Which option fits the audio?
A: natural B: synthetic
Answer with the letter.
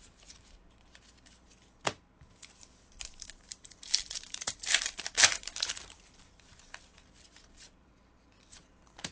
B